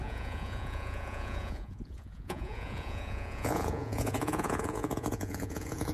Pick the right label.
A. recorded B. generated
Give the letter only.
B